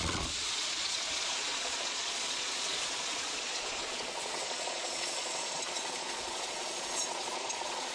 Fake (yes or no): yes